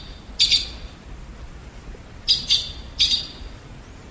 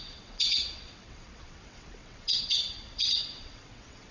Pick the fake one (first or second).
second